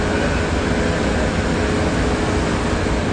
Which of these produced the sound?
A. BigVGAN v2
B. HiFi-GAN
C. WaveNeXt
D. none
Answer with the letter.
D